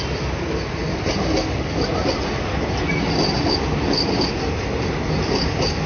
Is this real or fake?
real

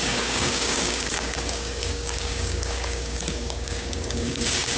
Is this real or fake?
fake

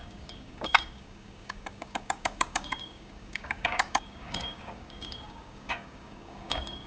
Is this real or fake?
fake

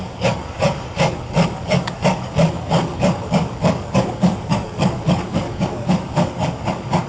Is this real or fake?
fake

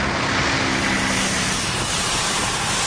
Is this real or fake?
real